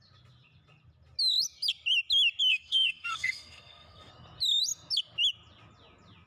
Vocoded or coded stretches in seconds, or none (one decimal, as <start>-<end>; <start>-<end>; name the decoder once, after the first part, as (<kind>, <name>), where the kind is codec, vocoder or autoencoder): 2.5-4.1 (codec, SNAC)